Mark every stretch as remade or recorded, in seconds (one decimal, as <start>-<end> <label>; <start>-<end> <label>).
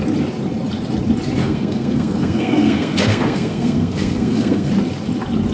0.0-1.4 recorded; 1.4-4.7 remade; 4.7-5.5 recorded